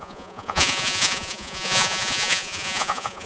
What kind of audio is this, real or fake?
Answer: fake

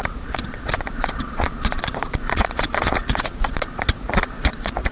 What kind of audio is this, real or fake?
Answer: fake